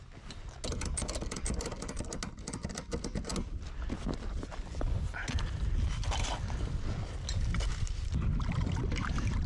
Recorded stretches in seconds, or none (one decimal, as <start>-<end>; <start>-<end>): 0.0-9.5